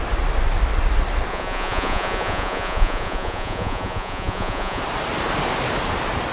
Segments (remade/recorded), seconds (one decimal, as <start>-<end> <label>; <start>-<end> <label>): 0.0-1.3 recorded; 1.3-4.8 remade; 4.8-6.3 recorded